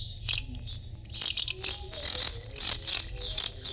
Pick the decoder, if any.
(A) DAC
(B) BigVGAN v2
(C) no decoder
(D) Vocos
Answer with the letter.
C